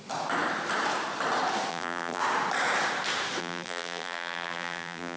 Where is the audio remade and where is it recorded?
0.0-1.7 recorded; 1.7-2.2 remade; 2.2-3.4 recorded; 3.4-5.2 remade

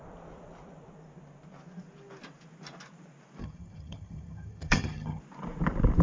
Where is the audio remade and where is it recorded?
0.0-3.4 recorded; 3.4-5.2 remade; 5.2-6.0 recorded

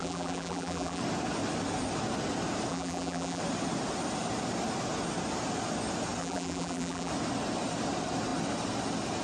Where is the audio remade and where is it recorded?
0.0-1.0 remade; 1.0-2.7 recorded; 2.7-3.4 remade; 3.4-6.2 recorded; 6.2-7.1 remade; 7.1-9.2 recorded